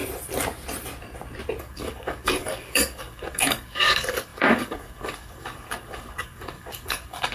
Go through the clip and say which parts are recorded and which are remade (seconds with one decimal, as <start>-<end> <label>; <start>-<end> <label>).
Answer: 0.0-1.6 recorded; 1.6-7.3 remade